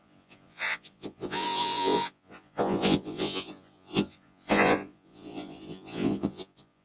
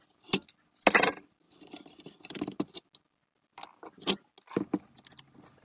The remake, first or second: first